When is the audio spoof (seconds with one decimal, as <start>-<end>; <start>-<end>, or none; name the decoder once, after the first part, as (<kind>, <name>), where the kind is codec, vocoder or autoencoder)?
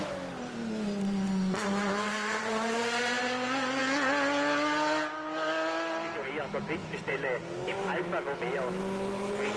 1.8-3.0 (vocoder, BigVGAN v2); 6.8-8.1